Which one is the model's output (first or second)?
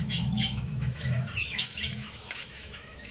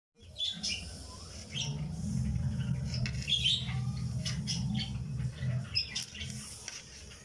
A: first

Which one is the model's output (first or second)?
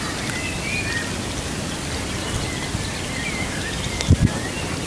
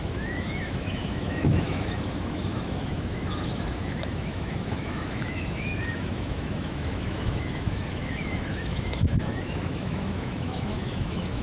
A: second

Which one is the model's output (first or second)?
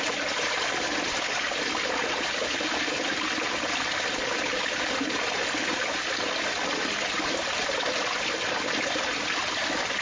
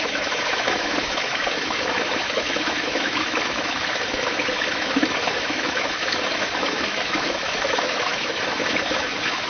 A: second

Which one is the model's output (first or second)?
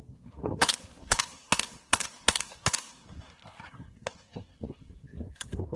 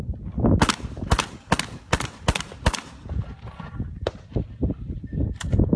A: first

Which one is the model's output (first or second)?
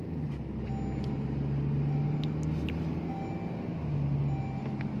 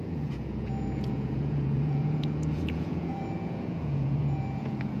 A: second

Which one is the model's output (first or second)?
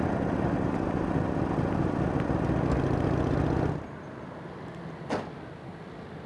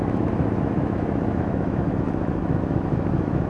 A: second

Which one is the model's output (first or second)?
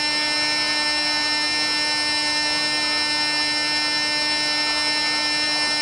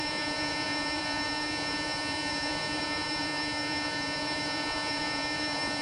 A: second